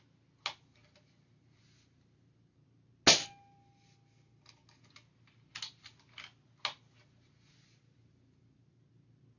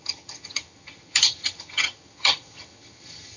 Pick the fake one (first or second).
second